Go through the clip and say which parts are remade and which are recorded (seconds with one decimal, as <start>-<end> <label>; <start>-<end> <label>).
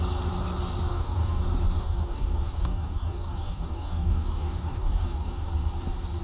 0.0-0.9 recorded; 0.9-1.4 remade; 1.4-1.8 recorded; 1.8-5.5 remade; 5.5-6.2 recorded